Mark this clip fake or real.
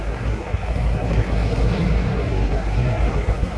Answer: fake